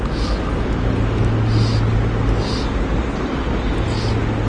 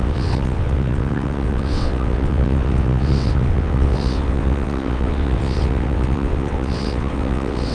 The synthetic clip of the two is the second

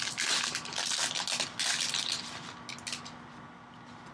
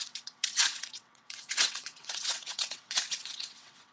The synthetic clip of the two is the second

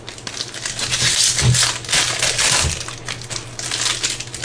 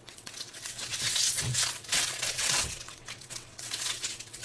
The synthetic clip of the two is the second